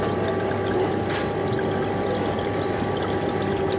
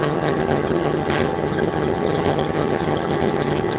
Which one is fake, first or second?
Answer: second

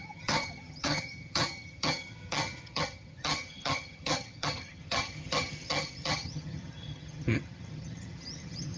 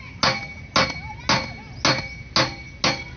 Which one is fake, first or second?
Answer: first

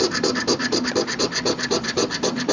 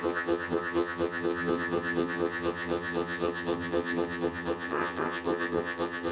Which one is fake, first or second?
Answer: second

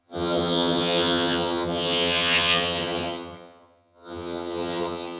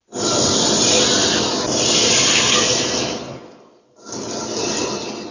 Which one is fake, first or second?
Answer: first